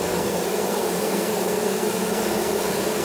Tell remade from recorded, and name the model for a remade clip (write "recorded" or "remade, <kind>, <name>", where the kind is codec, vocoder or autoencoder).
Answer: remade, codec, SNAC